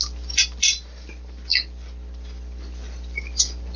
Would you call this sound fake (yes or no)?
no